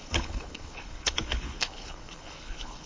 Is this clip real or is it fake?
fake